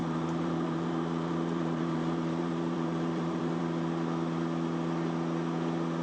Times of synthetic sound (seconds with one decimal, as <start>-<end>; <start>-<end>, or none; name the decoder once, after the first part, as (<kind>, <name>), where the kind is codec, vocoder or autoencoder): 0.0-3.6 (vocoder, BigVGAN v2)